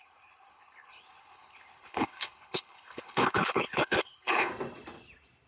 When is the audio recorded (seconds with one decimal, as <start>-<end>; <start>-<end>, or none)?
4.5-5.5